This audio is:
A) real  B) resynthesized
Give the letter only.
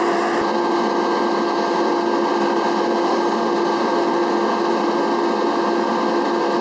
A